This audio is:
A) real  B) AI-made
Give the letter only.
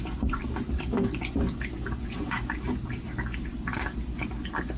A